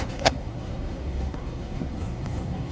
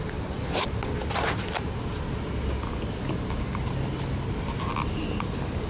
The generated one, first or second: first